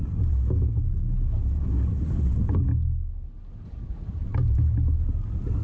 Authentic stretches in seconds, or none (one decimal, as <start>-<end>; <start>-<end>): 0.0-5.6